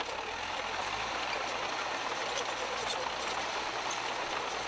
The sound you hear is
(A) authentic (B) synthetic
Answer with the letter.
B